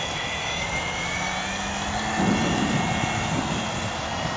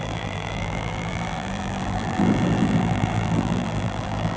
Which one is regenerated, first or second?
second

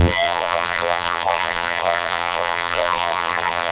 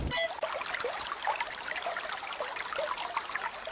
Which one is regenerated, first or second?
first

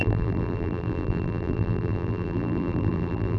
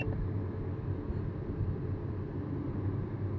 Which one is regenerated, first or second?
first